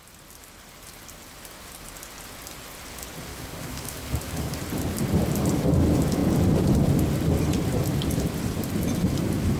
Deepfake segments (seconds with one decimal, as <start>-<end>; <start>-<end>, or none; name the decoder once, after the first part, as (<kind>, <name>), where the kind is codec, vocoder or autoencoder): 3.3-4.6 (codec, DAC)